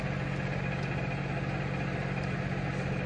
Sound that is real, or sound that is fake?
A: real